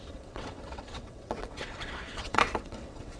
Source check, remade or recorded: remade